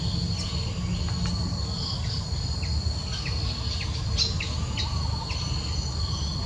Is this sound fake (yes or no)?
no